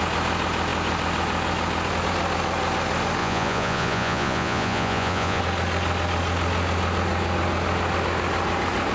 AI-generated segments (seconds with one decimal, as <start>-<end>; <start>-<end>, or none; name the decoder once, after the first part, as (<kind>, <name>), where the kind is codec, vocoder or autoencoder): 3.2-5.4 (vocoder, Vocos)

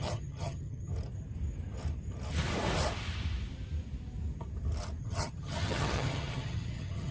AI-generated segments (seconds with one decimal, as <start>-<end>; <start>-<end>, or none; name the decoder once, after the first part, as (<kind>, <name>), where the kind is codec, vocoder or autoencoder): 0.0-0.9 (vocoder, HiFi-GAN); 5.0-7.1